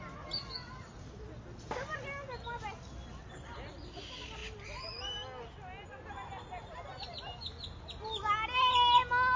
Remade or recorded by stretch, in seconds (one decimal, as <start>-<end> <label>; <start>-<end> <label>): 0.0-9.4 recorded